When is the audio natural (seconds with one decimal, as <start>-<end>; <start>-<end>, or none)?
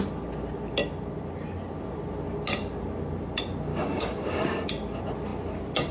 0.0-3.7; 4.7-5.9